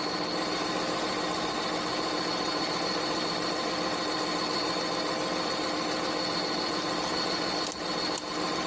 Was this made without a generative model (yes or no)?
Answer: yes